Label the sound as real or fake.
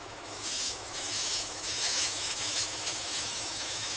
fake